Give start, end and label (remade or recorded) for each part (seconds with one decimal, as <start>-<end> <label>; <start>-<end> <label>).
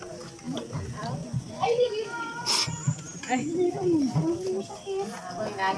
0.0-1.2 recorded; 1.2-1.9 remade; 1.9-5.8 recorded